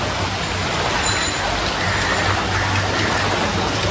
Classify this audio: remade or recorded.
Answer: recorded